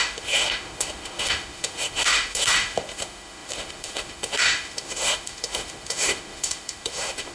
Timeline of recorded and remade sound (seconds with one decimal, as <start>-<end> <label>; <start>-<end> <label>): 0.0-7.3 remade